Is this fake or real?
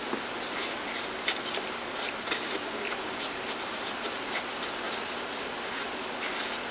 real